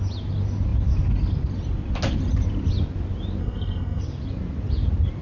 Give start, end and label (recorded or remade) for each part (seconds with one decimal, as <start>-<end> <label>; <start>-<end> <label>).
0.0-3.4 recorded; 3.4-4.0 remade; 4.0-5.2 recorded